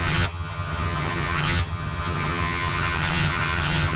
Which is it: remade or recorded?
remade